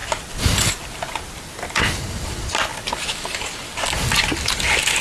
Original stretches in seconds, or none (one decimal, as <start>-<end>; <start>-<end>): 0.0-5.0